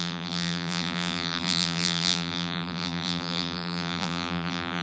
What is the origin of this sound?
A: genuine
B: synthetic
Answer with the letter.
B